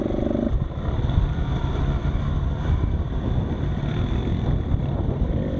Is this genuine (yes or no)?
yes